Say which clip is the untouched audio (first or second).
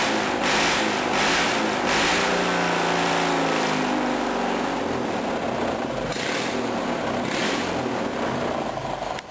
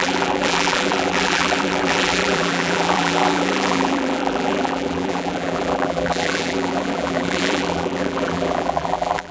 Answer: first